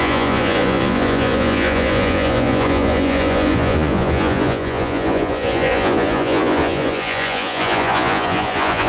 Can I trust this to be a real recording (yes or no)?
no